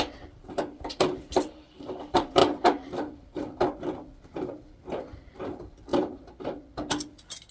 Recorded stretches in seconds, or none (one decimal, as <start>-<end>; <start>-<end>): 0.0-5.9; 6.5-7.5